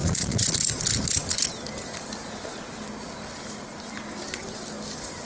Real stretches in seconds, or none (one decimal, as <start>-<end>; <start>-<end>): 0.6-5.3

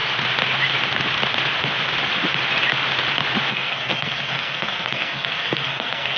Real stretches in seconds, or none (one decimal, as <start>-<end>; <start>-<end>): 0.0-3.5

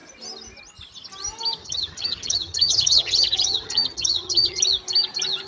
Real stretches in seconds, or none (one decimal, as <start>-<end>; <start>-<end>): 0.0-1.6; 4.6-5.5

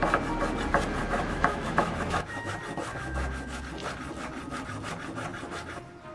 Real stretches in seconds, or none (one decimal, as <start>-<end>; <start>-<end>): 0.0-1.0; 2.5-2.9; 3.6-6.1

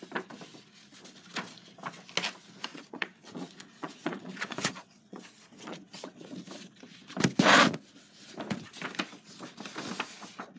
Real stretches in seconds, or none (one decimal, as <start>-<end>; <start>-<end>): 0.0-2.7; 6.3-10.6